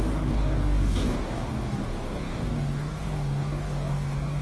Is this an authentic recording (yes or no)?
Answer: no